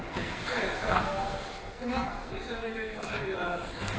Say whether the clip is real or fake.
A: fake